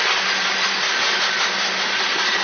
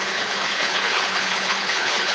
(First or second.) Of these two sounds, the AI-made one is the second